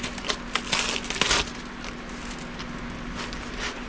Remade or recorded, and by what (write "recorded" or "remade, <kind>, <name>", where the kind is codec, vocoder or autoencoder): recorded